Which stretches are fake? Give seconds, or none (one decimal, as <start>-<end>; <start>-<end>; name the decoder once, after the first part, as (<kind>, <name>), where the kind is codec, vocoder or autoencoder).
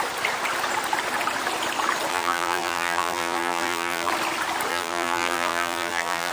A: 2.1-4.1 (vocoder, BigVGAN v2); 4.7-6.3